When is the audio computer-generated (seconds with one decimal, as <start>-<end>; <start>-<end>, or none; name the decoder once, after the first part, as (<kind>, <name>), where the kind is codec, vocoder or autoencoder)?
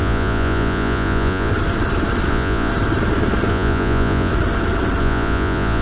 0.0-1.5 (vocoder, Vocos); 2.3-2.7; 3.5-4.3; 5.0-5.8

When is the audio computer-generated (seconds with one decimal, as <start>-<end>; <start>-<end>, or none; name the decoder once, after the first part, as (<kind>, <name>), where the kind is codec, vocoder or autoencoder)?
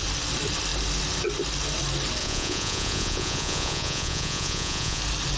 2.2-5.0 (vocoder, Vocos)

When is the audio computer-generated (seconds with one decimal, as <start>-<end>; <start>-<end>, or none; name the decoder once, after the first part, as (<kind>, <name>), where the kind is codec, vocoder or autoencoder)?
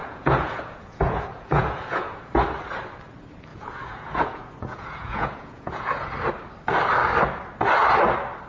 0.0-2.4 (vocoder, Vocos); 3.5-6.1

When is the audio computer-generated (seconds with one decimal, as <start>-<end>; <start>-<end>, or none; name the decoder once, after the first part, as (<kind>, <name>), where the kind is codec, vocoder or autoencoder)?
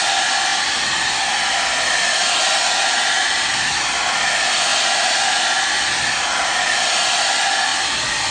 none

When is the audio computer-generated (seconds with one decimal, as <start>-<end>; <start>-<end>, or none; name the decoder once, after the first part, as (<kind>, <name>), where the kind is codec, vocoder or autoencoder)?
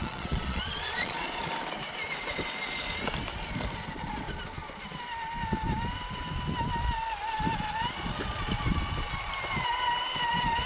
0.0-1.4 (vocoder, Vocos)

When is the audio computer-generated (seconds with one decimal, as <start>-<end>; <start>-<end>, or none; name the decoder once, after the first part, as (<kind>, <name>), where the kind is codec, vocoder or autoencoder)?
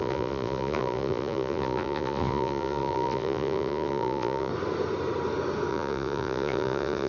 0.0-4.5 (vocoder, Vocos); 5.7-7.1